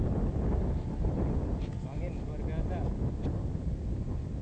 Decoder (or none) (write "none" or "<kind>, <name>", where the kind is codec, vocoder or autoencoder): none